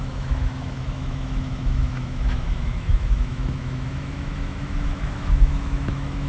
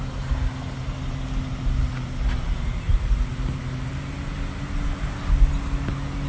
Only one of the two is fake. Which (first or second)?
first